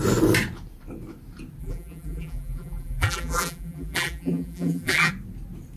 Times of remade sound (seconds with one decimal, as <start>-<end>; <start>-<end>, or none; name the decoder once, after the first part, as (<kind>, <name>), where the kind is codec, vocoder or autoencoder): 1.6-5.1 (vocoder, BigVGAN v2)